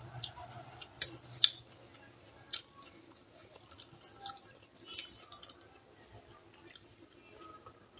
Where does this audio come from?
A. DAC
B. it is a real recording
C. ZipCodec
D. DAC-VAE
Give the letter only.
B